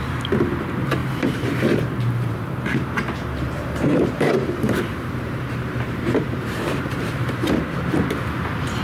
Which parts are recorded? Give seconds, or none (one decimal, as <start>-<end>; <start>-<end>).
none